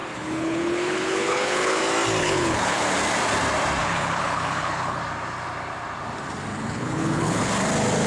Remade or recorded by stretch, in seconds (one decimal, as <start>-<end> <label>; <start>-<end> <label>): 0.0-1.8 remade; 1.8-2.2 recorded; 2.2-2.8 remade; 2.8-3.8 recorded; 3.8-5.0 remade; 5.0-6.5 recorded; 6.5-7.5 remade; 7.5-8.1 recorded